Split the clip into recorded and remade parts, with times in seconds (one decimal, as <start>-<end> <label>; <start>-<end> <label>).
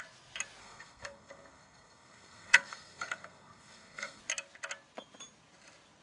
0.0-0.6 recorded; 0.6-4.2 remade; 4.2-6.0 recorded